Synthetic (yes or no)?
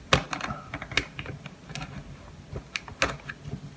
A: no